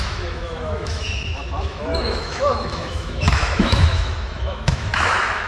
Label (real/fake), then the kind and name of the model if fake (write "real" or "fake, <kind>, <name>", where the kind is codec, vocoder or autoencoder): fake, autoencoder, DAC-VAE